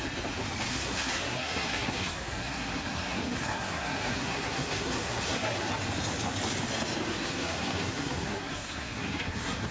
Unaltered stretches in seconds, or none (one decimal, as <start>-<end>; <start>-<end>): 0.0-0.7; 5.7-7.1